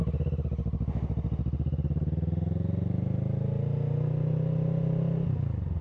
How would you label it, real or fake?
real